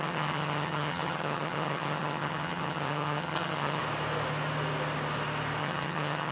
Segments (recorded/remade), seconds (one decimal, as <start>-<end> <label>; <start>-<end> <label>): 0.0-3.8 remade; 3.8-5.6 recorded; 5.6-6.3 remade